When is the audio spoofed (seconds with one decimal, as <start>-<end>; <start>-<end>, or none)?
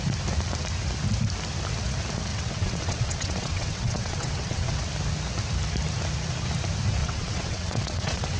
2.3-4.8; 7.0-8.4